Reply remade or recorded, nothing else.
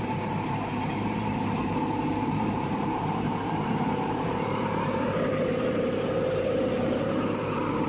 remade